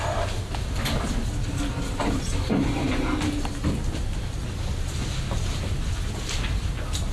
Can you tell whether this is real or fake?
real